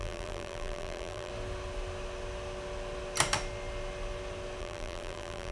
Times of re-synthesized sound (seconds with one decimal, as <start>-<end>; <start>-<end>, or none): 0.0-1.3; 4.6-5.5